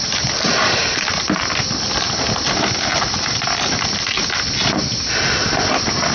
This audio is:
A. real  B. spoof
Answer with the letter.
A